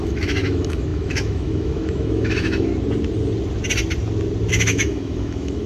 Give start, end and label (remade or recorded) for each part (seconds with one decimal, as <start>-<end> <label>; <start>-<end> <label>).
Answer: 0.0-2.7 remade; 2.7-4.5 recorded; 4.5-5.7 remade

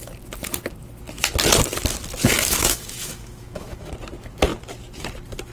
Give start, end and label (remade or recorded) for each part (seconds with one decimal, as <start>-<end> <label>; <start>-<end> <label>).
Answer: 0.0-2.4 recorded; 2.4-3.9 remade; 3.9-5.5 recorded

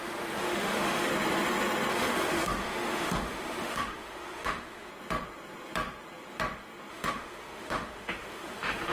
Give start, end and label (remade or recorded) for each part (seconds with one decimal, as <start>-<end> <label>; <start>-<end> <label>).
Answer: 0.0-1.1 remade; 1.1-1.9 recorded; 1.9-4.9 remade; 4.9-6.9 recorded; 6.9-8.9 remade

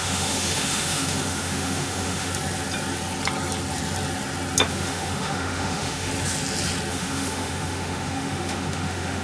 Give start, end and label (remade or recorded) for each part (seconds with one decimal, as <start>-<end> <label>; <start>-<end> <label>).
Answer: 0.0-2.3 remade; 2.3-4.7 recorded; 4.7-6.1 remade; 6.1-6.9 recorded; 6.9-9.2 remade

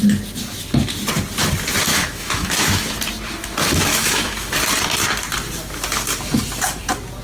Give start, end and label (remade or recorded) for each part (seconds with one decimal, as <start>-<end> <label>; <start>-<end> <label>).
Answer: 0.0-1.9 recorded; 1.9-2.9 remade; 2.9-3.9 recorded; 3.9-4.5 remade; 4.5-7.2 recorded